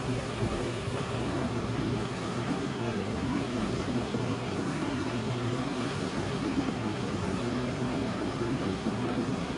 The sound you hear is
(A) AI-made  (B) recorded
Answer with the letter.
A